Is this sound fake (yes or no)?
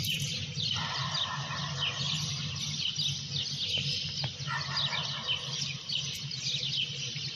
yes